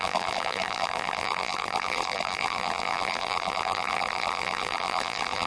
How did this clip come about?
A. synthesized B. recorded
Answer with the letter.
A